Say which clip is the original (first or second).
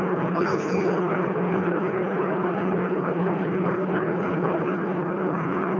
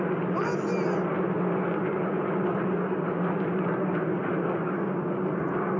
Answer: second